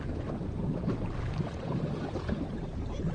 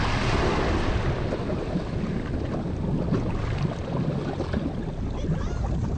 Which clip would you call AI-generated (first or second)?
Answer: first